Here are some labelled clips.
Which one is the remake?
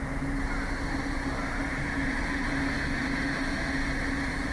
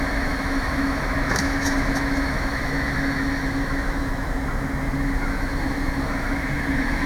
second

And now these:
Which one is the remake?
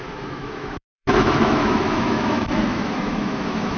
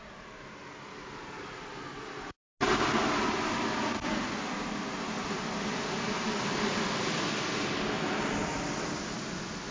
first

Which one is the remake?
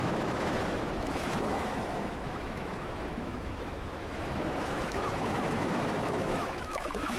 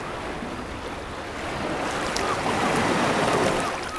first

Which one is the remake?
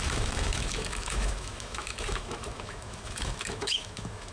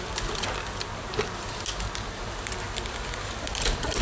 first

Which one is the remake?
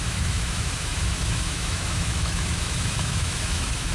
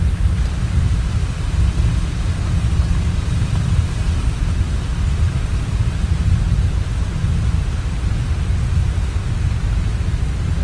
first